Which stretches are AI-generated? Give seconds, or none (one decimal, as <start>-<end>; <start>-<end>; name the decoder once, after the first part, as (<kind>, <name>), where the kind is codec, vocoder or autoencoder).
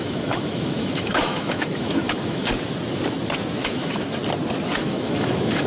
0.0-2.5 (autoencoder, DAC-VAE); 3.6-4.2; 4.8-5.7